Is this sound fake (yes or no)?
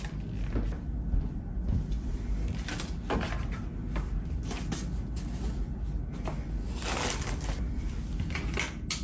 no